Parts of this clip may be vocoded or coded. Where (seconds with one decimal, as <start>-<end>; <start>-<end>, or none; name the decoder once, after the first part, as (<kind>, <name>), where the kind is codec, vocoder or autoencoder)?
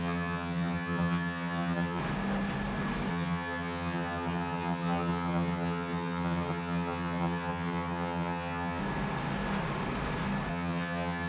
0.0-2.0 (vocoder, HiFi-GAN); 3.1-8.8; 10.5-11.3